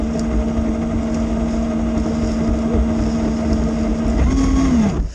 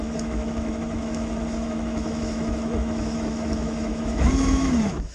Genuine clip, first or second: first